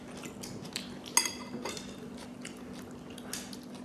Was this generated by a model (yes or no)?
no